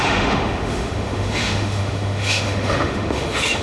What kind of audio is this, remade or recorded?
remade